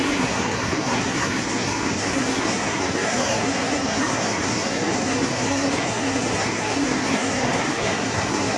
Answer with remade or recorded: remade